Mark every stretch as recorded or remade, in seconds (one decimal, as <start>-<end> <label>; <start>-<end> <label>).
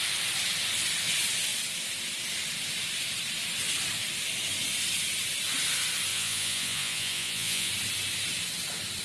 0.0-6.1 recorded; 6.1-7.7 remade; 7.7-9.0 recorded